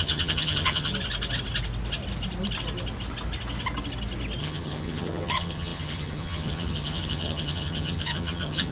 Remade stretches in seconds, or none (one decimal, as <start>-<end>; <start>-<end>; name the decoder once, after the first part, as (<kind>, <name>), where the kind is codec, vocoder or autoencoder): 0.0-0.9 (vocoder, HiFi-GAN); 4.4-8.7